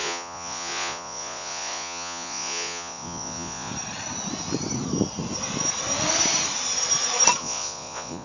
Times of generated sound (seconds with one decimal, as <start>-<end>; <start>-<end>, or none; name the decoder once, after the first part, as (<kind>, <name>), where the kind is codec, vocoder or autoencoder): 0.0-3.7 (vocoder, Vocos); 7.4-8.2